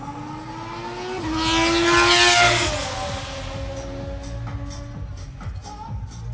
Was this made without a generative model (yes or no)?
yes